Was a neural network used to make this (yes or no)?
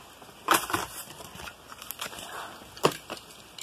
no